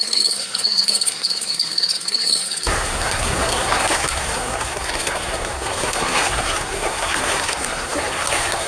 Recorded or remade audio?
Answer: remade